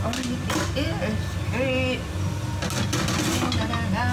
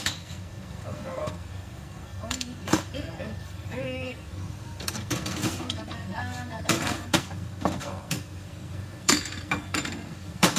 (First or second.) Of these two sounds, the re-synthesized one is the second